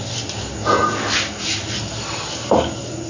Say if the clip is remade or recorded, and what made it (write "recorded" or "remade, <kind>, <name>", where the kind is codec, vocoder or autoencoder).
recorded